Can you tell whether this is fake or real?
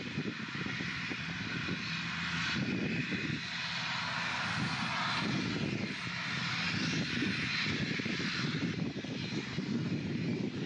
real